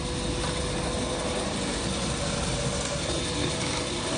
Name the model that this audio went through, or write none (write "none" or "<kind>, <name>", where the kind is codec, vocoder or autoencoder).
none